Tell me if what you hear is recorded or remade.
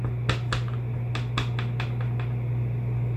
recorded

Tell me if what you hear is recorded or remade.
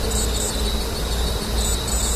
recorded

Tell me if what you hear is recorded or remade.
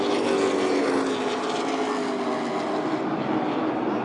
recorded